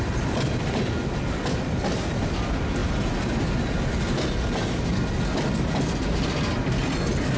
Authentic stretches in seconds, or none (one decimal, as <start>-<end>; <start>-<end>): 0.0-7.4